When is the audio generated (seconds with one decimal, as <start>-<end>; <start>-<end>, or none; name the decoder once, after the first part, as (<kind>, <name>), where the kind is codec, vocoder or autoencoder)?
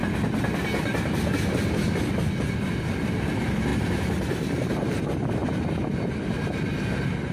3.7-5.0 (vocoder, BigVGAN v2)